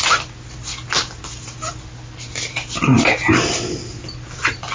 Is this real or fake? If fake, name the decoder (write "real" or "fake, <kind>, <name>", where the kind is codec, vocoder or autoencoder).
real